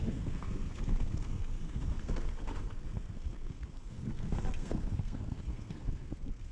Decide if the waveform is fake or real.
fake